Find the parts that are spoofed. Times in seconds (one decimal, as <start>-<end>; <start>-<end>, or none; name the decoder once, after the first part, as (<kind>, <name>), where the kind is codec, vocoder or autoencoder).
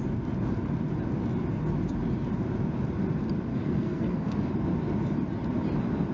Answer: 3.5-4.5 (codec, SNAC)